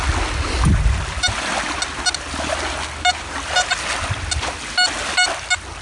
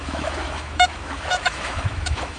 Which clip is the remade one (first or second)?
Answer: second